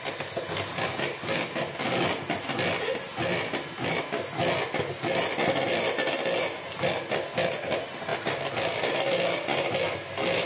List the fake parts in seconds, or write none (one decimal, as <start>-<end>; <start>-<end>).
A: none